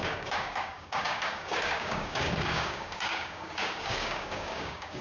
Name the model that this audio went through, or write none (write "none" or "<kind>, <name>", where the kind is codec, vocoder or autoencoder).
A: codec, DAC